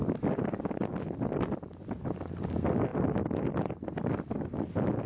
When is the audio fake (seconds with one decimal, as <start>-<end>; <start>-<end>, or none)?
none